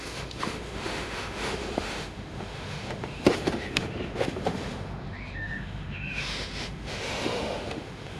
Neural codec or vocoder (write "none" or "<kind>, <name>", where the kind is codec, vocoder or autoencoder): autoencoder, DAC-VAE